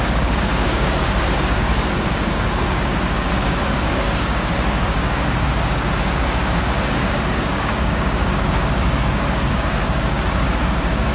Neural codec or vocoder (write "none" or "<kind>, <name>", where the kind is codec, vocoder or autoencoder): codec, DAC